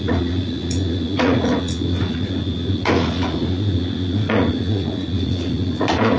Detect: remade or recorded remade